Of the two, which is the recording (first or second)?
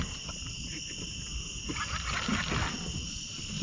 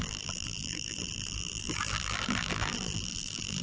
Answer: first